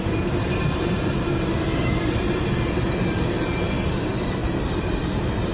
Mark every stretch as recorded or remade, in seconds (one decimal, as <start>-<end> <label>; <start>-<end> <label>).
0.0-1.3 remade; 1.3-3.4 recorded; 3.4-5.5 remade